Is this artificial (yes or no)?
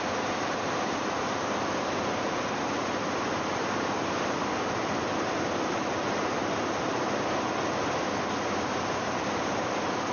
no